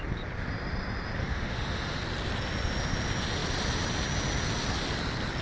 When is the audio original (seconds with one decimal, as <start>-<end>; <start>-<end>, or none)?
0.0-1.2; 2.0-5.4